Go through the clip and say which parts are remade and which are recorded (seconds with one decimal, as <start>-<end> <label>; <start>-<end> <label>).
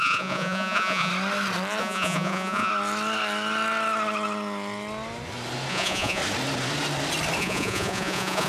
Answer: 0.0-1.1 remade; 1.1-1.8 recorded; 1.8-2.7 remade; 2.7-5.7 recorded; 5.7-6.2 remade; 6.2-7.4 recorded; 7.4-8.5 remade